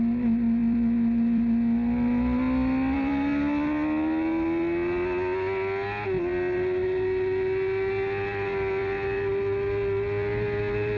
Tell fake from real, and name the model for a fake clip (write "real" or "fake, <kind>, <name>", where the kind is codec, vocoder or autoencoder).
real